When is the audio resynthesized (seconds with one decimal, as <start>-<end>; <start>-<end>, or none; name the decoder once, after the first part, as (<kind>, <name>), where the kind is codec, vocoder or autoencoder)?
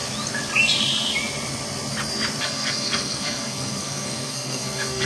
2.4-5.1 (codec, SNAC)